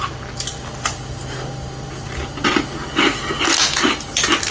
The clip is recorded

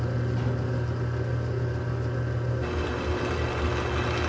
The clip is recorded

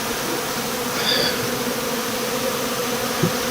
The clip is recorded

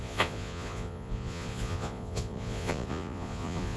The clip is remade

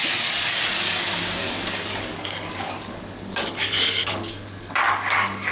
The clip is remade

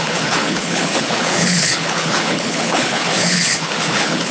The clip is remade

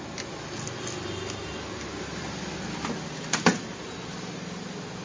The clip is recorded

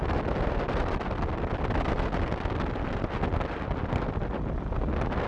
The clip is recorded